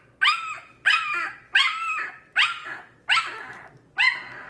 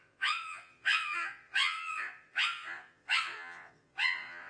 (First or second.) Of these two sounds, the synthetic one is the second